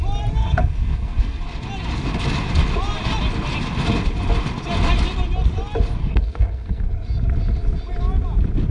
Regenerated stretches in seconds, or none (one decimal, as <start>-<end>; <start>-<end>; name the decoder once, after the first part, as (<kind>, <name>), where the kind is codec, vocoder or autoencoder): 0.4-1.4 (codec, SNAC); 6.0-6.9